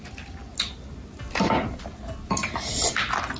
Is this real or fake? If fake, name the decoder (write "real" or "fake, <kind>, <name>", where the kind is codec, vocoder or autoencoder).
real